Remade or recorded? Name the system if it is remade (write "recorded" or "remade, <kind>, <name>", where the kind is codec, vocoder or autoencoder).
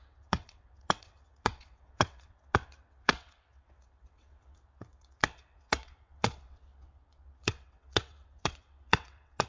remade, vocoder, WaveNeXt